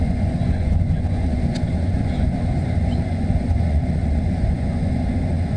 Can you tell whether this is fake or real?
fake